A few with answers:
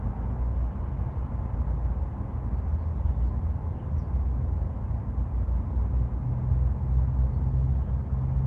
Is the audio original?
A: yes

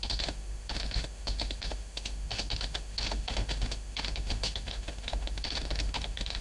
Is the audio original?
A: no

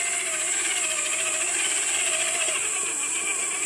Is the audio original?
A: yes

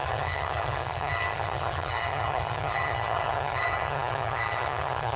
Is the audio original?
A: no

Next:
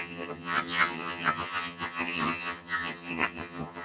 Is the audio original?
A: no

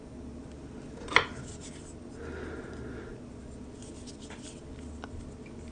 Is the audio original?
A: yes